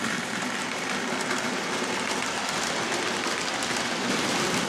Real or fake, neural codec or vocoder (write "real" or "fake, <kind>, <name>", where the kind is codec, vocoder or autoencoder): real